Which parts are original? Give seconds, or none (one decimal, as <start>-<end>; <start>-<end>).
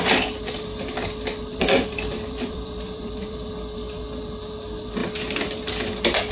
0.0-1.5; 3.5-5.0; 5.7-6.3